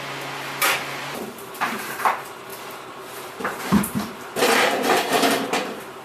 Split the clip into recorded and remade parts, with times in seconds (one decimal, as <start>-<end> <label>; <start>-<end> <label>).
0.0-1.0 recorded; 1.0-2.1 remade; 2.1-2.5 recorded; 2.5-5.2 remade; 5.2-6.0 recorded